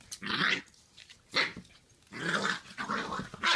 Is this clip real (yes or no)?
yes